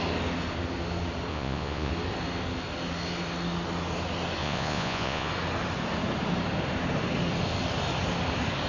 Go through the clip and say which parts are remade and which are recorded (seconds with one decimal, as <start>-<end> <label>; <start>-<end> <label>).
0.0-1.3 recorded; 1.3-1.9 remade; 1.9-4.4 recorded; 4.4-5.3 remade; 5.3-8.7 recorded